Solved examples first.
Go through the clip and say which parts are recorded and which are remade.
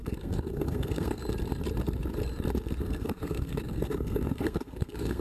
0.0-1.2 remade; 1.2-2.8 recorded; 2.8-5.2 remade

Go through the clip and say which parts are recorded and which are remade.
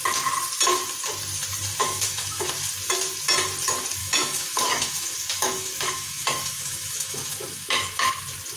0.0-1.8 recorded; 1.8-2.5 remade; 2.5-4.0 recorded; 4.0-8.1 remade; 8.1-8.6 recorded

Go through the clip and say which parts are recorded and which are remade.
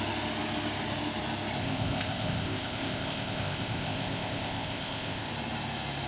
0.0-1.6 recorded; 1.6-5.3 remade; 5.3-6.1 recorded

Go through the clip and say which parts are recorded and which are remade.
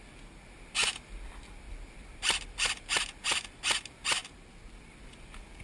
0.0-5.6 recorded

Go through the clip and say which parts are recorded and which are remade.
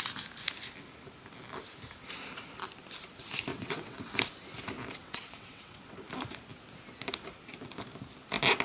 0.0-3.5 recorded; 3.5-4.1 remade; 4.1-5.0 recorded; 5.0-6.0 remade; 6.0-8.6 recorded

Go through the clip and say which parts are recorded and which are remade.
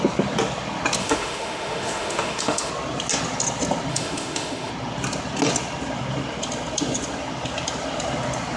0.0-1.0 recorded; 1.0-2.7 remade; 2.7-3.9 recorded; 3.9-4.7 remade; 4.7-8.6 recorded